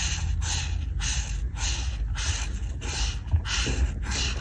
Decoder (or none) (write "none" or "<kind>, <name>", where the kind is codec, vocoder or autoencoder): none